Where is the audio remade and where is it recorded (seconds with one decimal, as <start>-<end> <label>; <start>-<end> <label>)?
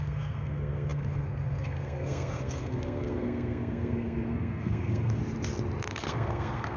0.0-5.2 remade; 5.2-5.9 recorded; 5.9-6.8 remade